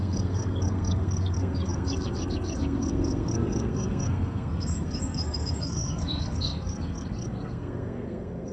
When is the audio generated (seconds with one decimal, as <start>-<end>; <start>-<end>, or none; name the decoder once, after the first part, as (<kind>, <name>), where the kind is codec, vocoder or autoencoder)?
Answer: 0.0-8.5 (codec, SNAC)